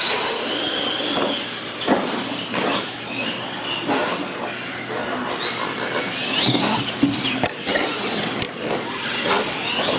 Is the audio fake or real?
real